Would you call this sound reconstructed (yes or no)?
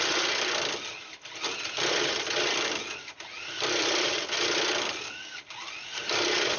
no